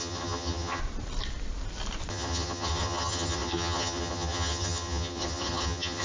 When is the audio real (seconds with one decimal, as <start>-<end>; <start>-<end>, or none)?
0.8-2.1